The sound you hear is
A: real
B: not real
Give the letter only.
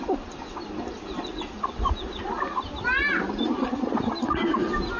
A